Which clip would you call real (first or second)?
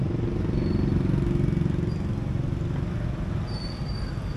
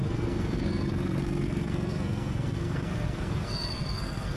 first